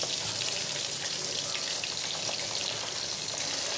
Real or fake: real